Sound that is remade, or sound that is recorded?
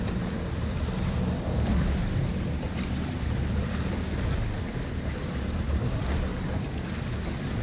recorded